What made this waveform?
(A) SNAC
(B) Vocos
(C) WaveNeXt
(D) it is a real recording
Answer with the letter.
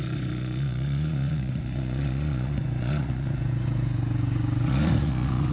B